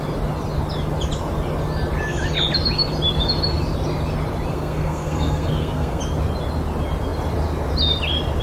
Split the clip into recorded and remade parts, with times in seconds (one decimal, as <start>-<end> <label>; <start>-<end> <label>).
0.0-4.5 recorded; 4.5-6.0 remade; 6.0-8.4 recorded